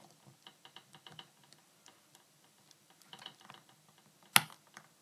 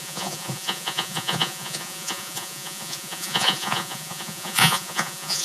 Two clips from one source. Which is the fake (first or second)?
second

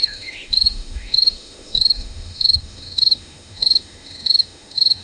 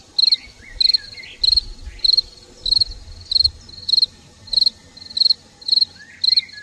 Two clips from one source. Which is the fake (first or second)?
first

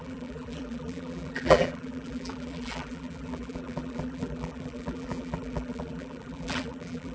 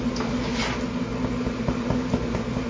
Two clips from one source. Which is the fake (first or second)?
first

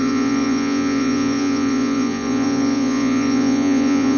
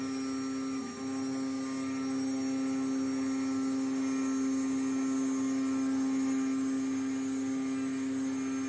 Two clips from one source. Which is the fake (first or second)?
first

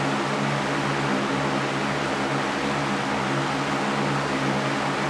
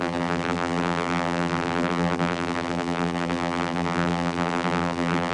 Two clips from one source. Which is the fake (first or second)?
second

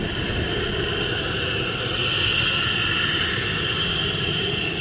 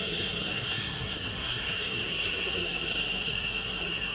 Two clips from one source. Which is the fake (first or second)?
second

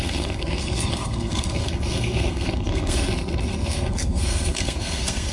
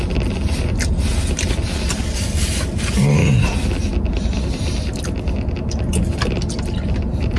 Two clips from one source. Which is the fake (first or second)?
first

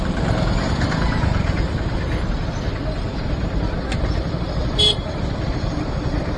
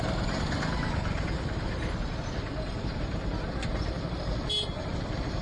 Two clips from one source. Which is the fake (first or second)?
first